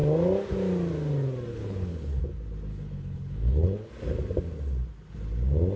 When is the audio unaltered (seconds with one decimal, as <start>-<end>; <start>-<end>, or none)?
0.0-1.5; 2.2-2.7; 3.9-5.8

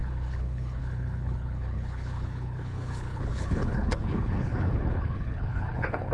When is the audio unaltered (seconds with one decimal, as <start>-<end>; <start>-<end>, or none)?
none

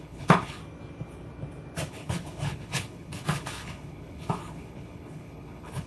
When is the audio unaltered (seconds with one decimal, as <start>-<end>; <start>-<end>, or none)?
0.6-1.9